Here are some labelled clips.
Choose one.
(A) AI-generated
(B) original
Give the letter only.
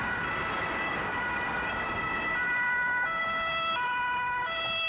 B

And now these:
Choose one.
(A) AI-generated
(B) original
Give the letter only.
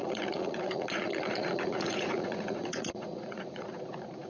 A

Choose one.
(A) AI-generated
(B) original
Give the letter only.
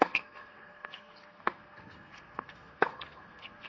A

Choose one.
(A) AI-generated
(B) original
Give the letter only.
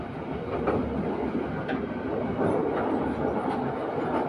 B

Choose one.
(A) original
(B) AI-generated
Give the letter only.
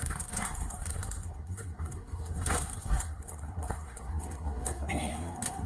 B